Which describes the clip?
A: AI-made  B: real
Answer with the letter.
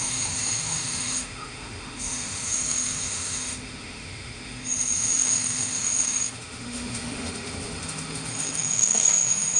A